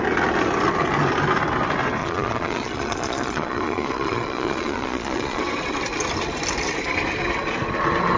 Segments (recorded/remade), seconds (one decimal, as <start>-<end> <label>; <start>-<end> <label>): 0.0-2.0 recorded; 2.0-5.4 remade; 5.4-8.2 recorded